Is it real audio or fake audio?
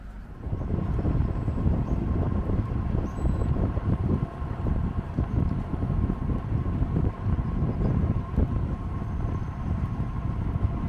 fake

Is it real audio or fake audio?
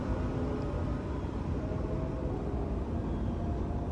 real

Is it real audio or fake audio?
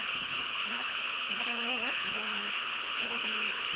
fake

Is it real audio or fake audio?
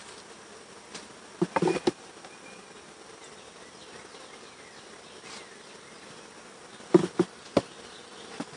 real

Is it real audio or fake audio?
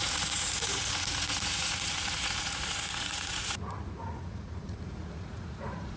fake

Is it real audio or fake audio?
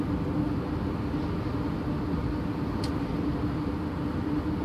real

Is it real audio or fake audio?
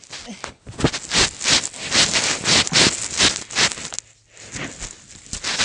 real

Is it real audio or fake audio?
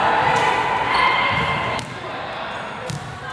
real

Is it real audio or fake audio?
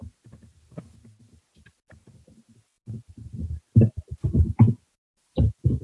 real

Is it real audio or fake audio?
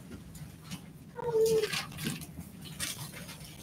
real